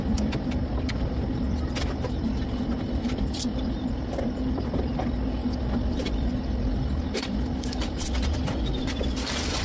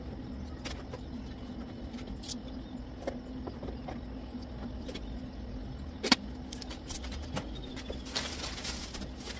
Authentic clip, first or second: second